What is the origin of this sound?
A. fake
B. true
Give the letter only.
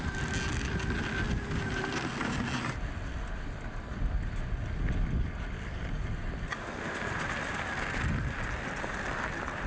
B